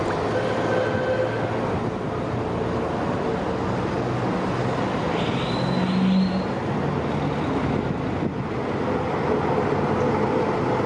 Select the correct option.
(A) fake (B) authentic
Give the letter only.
B